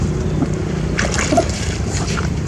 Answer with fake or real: real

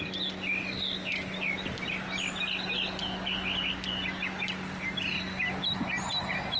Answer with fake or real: real